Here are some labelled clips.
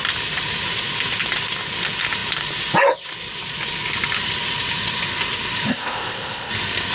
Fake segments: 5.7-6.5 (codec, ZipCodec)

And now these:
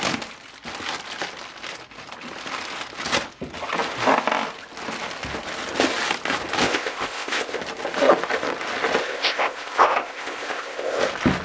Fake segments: 6.6-7.6 (codec, ZipCodec); 9.0-11.0

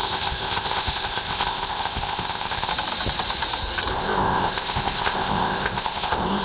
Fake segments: 0.0-2.7 (codec, ZipCodec); 3.9-6.4

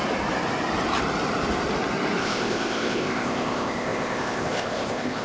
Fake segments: 2.2-5.2 (codec, ZipCodec)

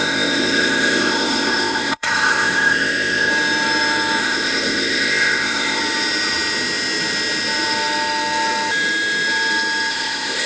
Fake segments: 0.0-3.3 (codec, ZipCodec); 4.2-5.8; 9.9-10.5

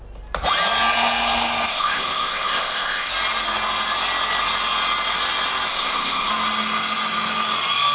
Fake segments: 1.7-3.1 (codec, ZipCodec); 5.7-6.3